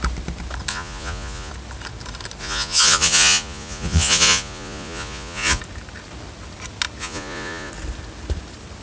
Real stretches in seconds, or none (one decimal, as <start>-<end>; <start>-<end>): 0.0-0.7; 1.5-2.4; 5.6-7.0; 7.7-8.8